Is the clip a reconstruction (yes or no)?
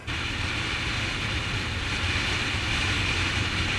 no